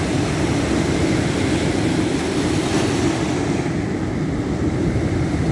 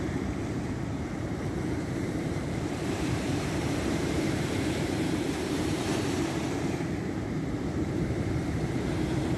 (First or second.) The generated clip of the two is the second